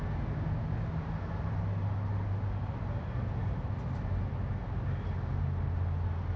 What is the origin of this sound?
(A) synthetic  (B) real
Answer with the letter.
B